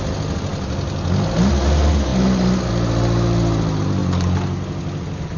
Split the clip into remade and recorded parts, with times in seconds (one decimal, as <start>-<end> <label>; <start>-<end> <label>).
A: 0.0-5.4 recorded